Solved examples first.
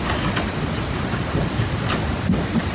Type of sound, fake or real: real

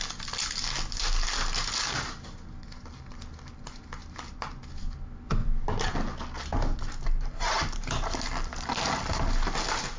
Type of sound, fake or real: real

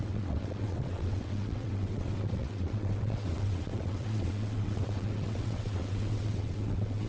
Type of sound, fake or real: fake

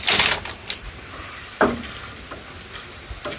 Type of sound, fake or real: real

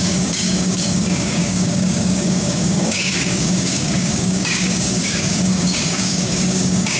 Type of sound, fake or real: fake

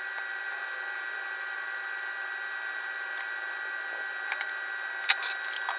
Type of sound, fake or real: real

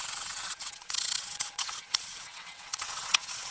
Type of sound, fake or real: fake